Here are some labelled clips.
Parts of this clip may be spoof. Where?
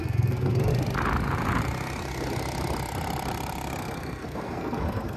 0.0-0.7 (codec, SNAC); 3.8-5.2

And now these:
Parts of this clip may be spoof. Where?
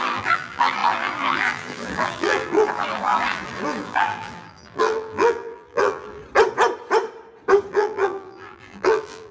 0.0-6.2 (vocoder, BigVGAN v2); 7.7-9.3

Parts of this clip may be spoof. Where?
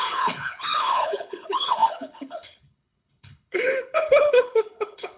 0.0-5.2 (codec, HILCodec)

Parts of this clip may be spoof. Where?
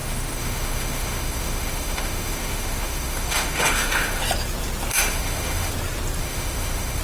0.0-4.2 (autoencoder, DAC-VAE); 4.9-5.7; 6.2-7.0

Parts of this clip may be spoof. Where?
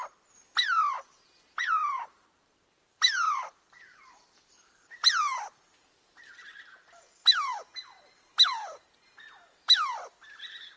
1.8-4.1 (vocoder, BigVGAN v2)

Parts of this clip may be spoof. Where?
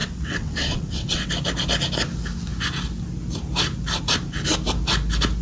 0.0-1.3 (vocoder, WaveNeXt)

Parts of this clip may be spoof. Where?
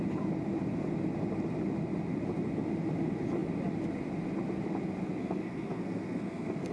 5.2-6.7 (codec, SNAC)